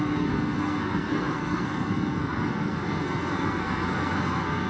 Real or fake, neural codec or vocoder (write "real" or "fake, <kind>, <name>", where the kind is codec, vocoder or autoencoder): fake, codec, SNAC